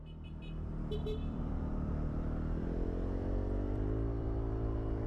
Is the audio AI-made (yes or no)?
yes